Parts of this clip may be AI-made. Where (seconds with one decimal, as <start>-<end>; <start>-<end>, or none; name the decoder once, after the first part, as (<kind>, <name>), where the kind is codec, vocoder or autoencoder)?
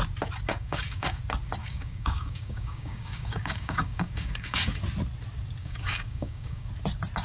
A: 0.5-1.2 (codec, DAC); 1.6-4.8; 5.6-6.7